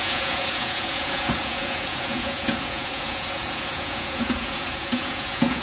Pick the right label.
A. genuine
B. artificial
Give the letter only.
B